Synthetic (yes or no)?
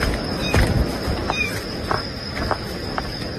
no